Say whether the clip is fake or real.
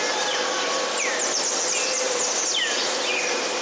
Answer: real